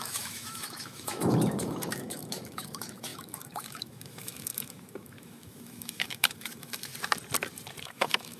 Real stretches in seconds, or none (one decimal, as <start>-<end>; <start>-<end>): 6.9-7.8